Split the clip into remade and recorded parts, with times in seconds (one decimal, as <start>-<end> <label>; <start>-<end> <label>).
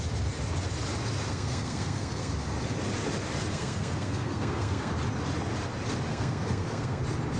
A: 0.0-1.3 recorded; 1.3-2.3 remade; 2.3-3.5 recorded; 3.5-4.9 remade; 4.9-6.1 recorded; 6.1-7.0 remade; 7.0-7.4 recorded